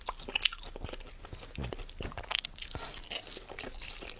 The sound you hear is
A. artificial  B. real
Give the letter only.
B